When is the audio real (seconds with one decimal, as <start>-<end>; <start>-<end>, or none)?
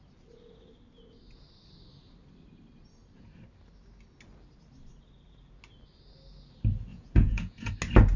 0.0-6.9; 7.7-8.2